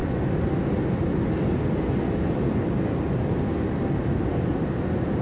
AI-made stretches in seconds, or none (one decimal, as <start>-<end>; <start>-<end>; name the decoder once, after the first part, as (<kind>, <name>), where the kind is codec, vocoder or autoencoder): none